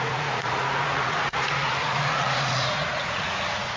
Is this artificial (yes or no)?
yes